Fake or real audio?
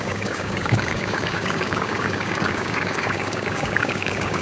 fake